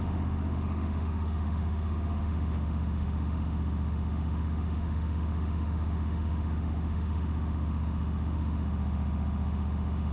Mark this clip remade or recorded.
remade